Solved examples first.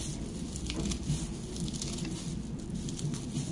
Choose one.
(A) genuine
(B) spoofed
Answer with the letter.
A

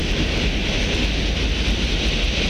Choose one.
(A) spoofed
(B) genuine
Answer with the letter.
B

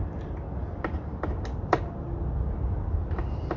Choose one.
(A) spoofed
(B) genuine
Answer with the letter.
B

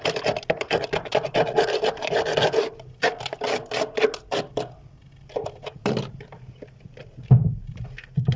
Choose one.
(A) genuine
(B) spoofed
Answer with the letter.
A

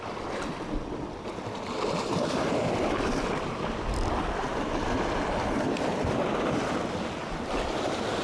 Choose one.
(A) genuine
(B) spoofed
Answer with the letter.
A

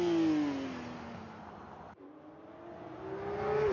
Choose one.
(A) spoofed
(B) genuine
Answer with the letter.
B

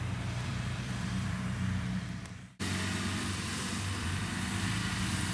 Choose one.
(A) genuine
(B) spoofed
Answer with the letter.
B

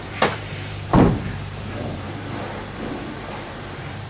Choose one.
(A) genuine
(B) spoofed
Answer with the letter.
B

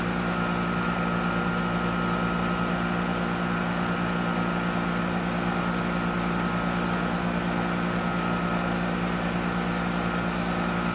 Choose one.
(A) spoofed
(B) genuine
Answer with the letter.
B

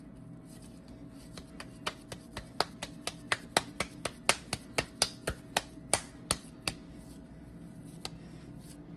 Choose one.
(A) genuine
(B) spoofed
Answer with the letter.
A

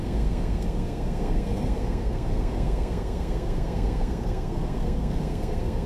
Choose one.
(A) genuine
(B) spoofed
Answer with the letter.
B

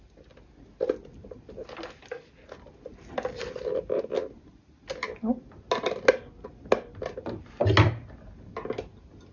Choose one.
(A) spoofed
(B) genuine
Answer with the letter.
B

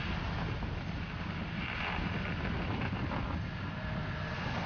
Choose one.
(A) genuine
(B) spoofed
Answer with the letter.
A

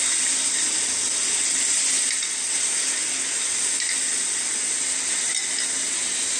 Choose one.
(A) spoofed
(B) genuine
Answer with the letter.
B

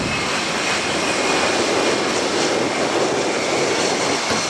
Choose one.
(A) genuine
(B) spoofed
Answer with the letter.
A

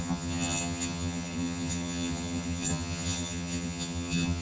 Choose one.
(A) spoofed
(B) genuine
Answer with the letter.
A